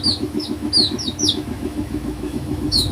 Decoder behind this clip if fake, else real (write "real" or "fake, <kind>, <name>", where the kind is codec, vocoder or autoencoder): fake, autoencoder, DAC-VAE